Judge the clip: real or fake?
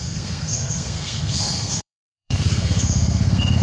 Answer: fake